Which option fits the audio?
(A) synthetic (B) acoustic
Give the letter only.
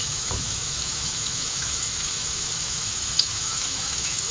A